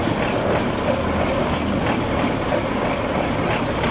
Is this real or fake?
real